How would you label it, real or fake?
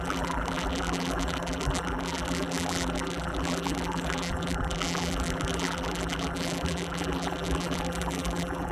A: fake